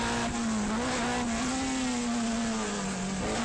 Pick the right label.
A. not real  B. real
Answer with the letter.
B